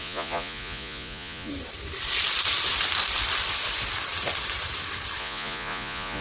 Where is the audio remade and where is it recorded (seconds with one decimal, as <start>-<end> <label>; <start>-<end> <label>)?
0.0-1.5 remade; 1.5-5.2 recorded; 5.2-6.2 remade

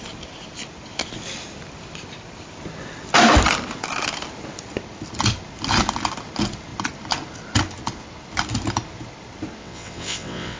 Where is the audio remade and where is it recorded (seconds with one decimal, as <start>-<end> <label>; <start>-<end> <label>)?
0.0-9.6 recorded; 9.6-10.6 remade

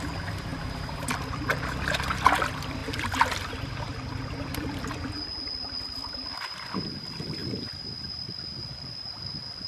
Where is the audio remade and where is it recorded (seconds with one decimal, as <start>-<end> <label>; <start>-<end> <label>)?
0.0-9.7 recorded

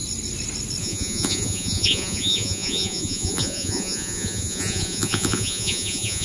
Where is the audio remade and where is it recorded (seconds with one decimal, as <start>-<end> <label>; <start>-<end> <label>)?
0.0-0.8 recorded; 0.8-6.2 remade

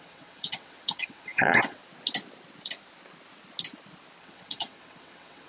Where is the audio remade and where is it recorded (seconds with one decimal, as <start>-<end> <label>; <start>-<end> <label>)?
0.0-1.8 remade; 1.8-4.2 recorded; 4.2-5.5 remade

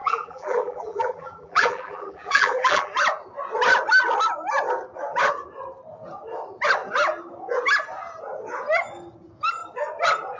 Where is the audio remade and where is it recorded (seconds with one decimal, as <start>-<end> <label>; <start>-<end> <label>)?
0.0-2.9 remade; 2.9-10.4 recorded

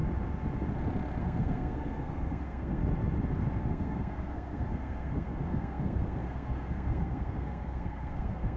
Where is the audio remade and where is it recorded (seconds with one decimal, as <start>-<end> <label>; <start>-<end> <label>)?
0.0-1.2 recorded; 1.2-2.8 remade; 2.8-3.7 recorded; 3.7-8.6 remade

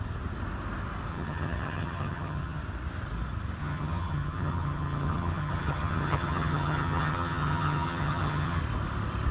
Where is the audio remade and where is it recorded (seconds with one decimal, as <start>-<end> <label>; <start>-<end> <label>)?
0.0-1.1 recorded; 1.1-2.6 remade; 2.6-3.6 recorded; 3.6-8.6 remade; 8.6-9.3 recorded